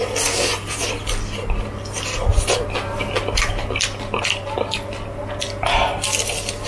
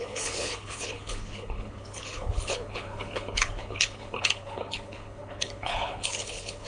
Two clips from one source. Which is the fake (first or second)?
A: second